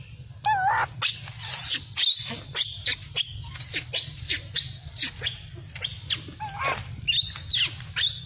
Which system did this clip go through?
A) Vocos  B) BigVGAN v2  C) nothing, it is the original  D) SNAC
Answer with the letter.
C